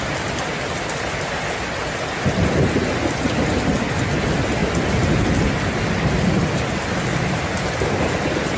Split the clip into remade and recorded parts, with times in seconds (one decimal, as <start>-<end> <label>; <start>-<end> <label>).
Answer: 0.0-8.6 recorded